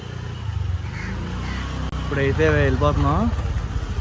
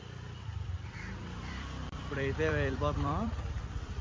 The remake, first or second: second